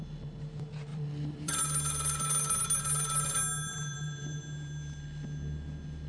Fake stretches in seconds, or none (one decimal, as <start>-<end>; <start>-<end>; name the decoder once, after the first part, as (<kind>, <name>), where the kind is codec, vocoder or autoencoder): 0.9-1.6 (vocoder, BigVGAN v2); 3.7-4.4